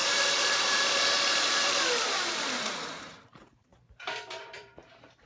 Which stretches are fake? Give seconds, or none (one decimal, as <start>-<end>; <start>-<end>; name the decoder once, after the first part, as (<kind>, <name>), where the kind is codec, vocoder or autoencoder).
0.0-5.3 (vocoder, BigVGAN v2)